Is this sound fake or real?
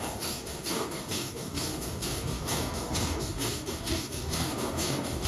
fake